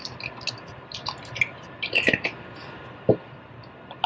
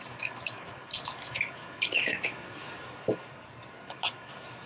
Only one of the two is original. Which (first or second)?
first